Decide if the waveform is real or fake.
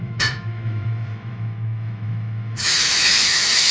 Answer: fake